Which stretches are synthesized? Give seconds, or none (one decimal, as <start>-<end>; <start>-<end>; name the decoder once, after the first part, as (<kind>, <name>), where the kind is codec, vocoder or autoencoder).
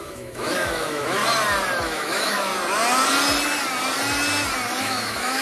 0.0-1.2 (autoencoder, DAC-VAE); 1.8-2.5; 4.8-5.4